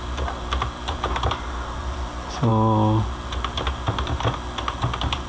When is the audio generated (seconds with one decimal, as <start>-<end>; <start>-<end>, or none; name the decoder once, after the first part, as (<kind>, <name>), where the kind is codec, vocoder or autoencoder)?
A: none